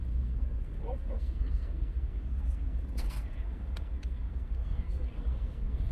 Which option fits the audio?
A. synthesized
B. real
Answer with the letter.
A